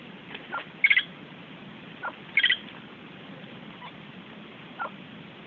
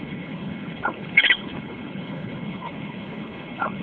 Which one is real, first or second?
first